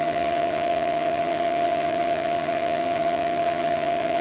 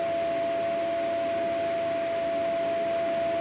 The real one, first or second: second